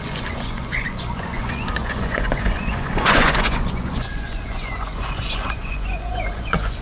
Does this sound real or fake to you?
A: fake